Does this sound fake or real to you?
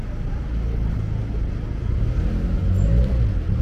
real